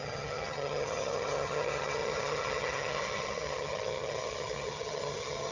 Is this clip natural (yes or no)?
no